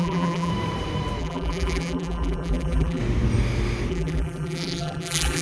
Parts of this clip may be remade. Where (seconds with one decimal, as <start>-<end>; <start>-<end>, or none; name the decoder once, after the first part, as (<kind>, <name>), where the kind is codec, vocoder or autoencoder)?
0.0-0.5 (vocoder, BigVGAN v2); 1.2-3.0; 3.9-5.4

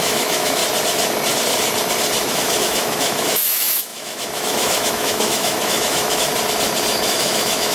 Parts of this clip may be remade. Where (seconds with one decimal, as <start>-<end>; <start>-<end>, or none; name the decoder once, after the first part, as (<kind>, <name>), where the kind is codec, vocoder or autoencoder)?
0.0-0.6 (autoencoder, DAC-VAE); 2.3-6.3; 6.9-7.7

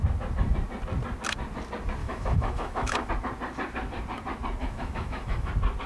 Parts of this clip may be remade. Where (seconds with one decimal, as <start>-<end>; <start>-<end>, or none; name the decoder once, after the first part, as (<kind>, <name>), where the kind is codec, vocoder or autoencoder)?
2.0-3.1 (autoencoder, DAC-VAE); 4.6-5.5

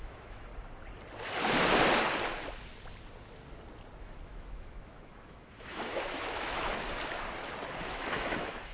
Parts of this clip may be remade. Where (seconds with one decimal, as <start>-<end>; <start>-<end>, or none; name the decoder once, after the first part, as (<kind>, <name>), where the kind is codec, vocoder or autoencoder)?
0.0-0.5 (autoencoder, DAC-VAE); 4.0-6.7; 7.8-8.7

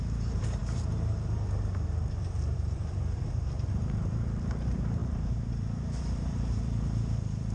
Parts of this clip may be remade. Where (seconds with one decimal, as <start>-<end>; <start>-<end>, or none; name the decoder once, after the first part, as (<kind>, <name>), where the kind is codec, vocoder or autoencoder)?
0.0-7.5 (vocoder, BigVGAN v2)

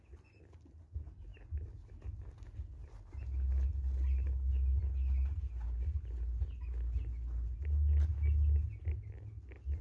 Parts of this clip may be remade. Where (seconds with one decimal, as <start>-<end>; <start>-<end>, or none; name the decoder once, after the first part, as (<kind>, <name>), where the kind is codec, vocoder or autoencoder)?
none

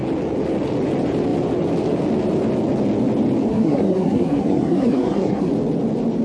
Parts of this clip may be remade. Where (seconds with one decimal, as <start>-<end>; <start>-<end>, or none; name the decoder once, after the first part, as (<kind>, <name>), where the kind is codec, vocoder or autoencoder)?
3.5-5.5 (codec, SNAC)